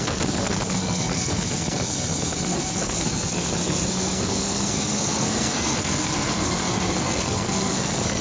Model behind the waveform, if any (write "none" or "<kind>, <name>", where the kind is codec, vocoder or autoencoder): codec, SNAC